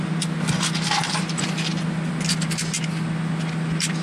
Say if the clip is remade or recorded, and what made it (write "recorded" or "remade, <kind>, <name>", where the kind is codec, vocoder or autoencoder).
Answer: recorded